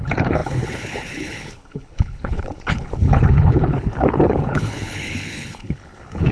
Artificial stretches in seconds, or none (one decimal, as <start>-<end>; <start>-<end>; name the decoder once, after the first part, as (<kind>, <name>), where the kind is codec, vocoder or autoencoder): 0.0-6.3 (codec, HILCodec)